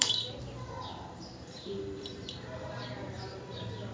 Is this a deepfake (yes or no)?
yes